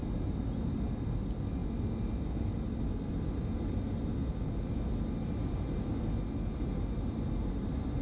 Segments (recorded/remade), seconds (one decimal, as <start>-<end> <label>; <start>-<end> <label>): 0.0-8.0 recorded